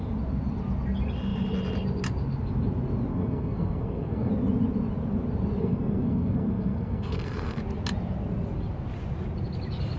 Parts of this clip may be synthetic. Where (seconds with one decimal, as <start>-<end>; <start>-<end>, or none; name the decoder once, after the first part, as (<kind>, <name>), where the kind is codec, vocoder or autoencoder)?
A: 3.1-4.3 (codec, SNAC); 5.6-7.6